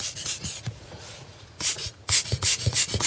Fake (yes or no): yes